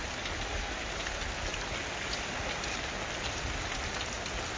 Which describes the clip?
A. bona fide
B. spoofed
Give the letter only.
A